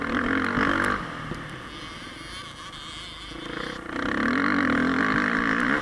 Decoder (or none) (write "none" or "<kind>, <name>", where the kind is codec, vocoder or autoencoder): none